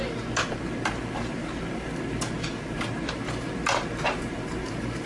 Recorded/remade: recorded